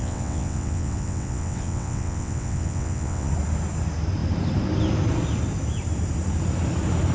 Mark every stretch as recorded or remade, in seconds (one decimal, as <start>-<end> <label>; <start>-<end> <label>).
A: 0.0-3.3 remade; 3.3-7.1 recorded